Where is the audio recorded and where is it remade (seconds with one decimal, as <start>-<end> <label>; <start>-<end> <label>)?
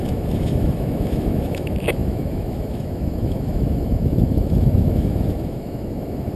0.0-6.4 remade